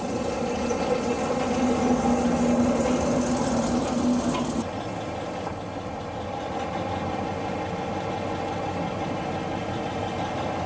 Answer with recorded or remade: recorded